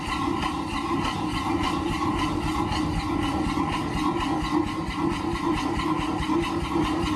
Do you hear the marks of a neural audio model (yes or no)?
no